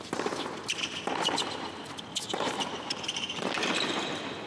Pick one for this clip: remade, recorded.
remade